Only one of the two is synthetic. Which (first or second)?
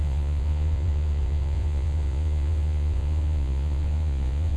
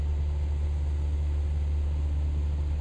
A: first